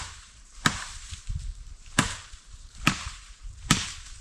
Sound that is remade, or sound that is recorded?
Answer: remade